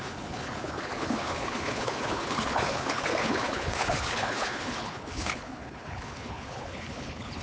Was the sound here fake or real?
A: fake